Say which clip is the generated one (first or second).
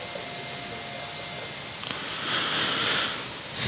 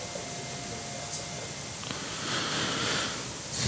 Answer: second